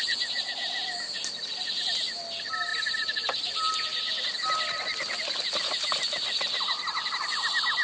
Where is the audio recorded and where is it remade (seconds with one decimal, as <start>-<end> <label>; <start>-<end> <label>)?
0.0-7.8 recorded